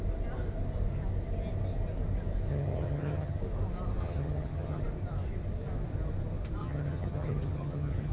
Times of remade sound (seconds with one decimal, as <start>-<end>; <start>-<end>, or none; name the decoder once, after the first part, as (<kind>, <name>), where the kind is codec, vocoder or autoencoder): 2.5-3.4 (vocoder, HiFi-GAN); 4.0-4.8; 6.6-8.1